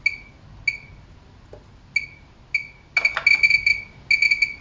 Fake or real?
real